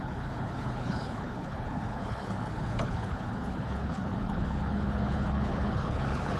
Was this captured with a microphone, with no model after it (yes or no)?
no